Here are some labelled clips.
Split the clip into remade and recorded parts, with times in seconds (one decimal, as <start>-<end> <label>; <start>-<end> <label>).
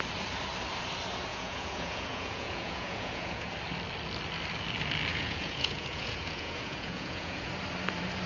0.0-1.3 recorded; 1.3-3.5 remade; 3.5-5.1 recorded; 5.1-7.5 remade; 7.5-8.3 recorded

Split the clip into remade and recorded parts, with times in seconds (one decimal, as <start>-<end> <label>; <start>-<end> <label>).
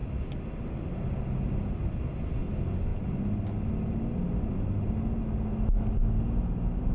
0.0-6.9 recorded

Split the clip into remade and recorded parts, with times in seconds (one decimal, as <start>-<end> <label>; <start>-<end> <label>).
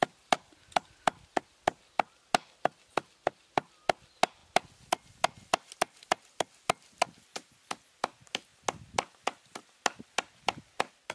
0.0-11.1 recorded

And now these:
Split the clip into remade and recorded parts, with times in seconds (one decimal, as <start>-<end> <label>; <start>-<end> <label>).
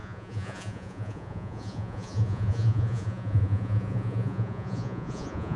0.0-5.6 remade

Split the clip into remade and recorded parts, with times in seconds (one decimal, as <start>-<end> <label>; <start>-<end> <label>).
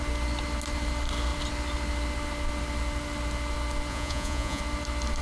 0.0-3.9 recorded; 3.9-4.6 remade; 4.6-5.2 recorded